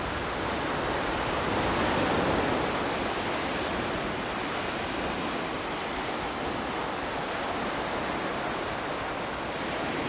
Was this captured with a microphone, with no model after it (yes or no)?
yes